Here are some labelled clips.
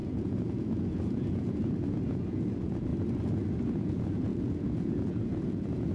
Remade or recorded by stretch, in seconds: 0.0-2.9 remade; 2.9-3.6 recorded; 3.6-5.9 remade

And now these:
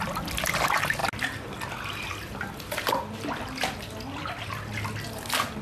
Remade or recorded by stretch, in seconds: 0.0-5.6 recorded

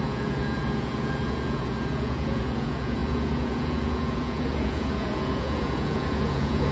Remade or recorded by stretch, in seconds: 0.0-6.7 remade